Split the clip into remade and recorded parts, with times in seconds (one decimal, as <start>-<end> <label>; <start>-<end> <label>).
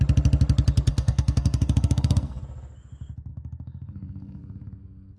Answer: 0.0-0.9 recorded; 0.9-2.4 remade; 2.4-3.3 recorded; 3.3-4.4 remade; 4.4-5.2 recorded